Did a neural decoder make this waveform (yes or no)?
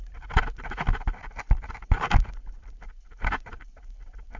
no